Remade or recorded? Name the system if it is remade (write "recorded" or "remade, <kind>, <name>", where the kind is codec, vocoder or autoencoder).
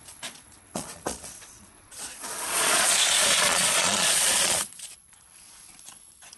remade, vocoder, Vocos